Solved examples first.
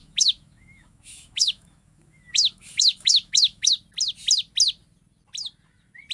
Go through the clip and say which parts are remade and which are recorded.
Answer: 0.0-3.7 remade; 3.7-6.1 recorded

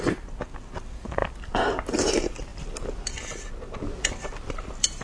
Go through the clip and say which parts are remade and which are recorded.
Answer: 0.0-5.0 recorded

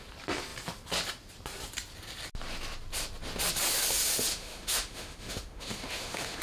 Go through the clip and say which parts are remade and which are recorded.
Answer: 0.0-4.3 recorded; 4.3-6.4 remade

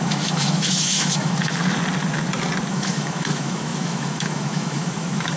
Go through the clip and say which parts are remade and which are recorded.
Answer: 0.0-1.6 remade; 1.6-2.7 recorded; 2.7-5.4 remade